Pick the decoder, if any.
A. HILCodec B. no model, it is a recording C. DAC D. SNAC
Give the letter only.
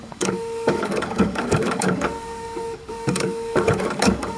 C